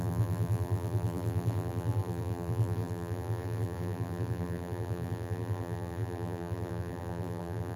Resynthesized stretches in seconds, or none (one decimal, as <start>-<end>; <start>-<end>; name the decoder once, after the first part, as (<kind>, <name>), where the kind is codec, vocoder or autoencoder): 0.0-7.8 (vocoder, BigVGAN v2)